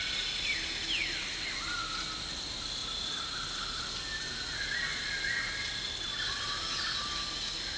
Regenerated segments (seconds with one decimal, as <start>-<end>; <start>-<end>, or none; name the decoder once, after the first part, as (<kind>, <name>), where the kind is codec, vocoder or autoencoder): none